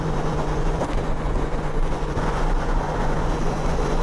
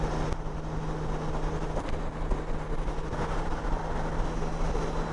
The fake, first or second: first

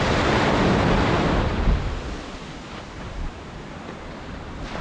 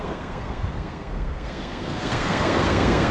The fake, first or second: second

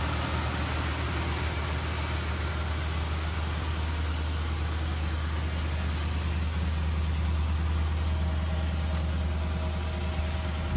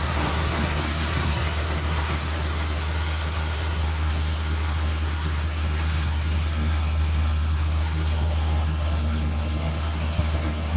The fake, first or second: second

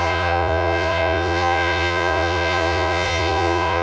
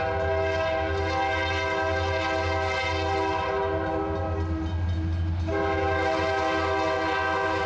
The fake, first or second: first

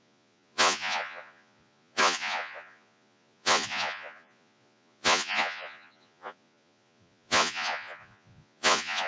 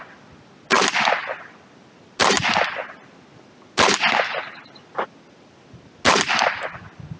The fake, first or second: first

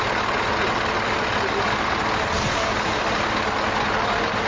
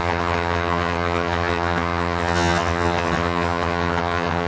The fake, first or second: second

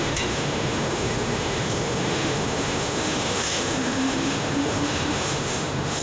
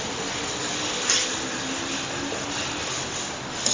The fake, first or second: first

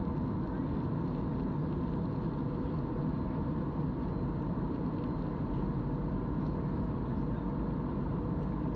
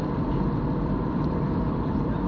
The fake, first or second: second